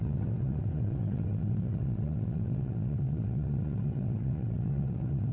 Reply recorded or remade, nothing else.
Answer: remade